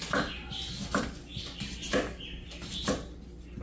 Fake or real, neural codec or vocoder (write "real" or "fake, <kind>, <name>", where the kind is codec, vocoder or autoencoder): real